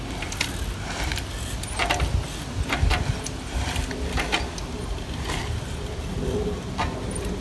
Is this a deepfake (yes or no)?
no